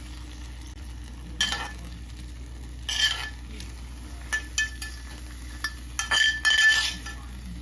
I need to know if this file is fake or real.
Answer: real